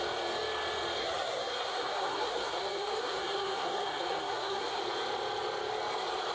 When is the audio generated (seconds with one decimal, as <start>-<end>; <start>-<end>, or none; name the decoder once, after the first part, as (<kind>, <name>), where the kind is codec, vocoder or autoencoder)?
1.0-4.8 (codec, SNAC)